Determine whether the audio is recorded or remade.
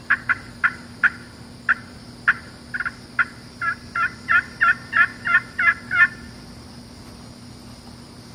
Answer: remade